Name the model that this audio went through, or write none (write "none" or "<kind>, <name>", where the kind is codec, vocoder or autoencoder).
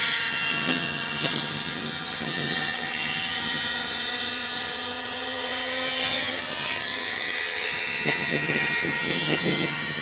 vocoder, HiFi-GAN